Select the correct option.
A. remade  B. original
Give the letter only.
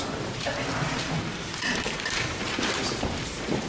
A